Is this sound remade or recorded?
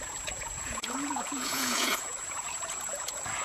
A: remade